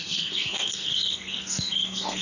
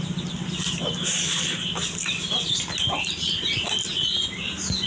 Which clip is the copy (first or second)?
first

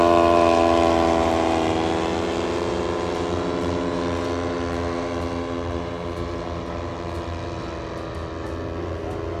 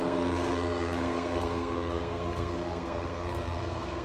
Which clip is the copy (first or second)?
second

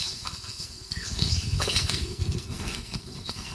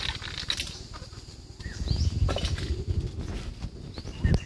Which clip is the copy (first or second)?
first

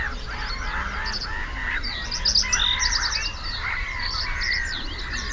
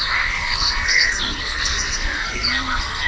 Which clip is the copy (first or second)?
second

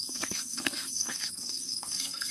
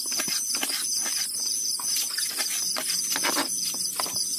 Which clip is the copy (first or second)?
first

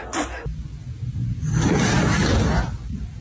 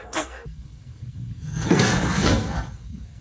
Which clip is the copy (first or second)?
second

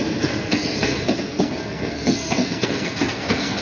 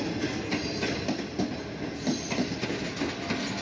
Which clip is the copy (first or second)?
first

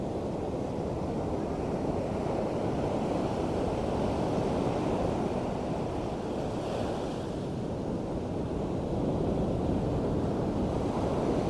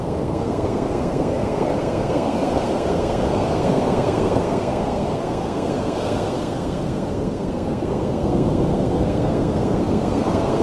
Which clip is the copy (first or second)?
second